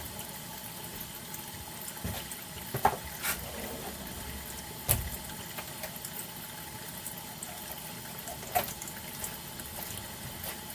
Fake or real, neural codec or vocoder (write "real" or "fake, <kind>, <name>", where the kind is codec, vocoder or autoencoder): real